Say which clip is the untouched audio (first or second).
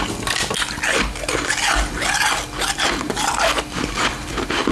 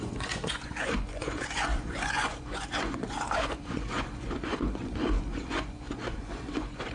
first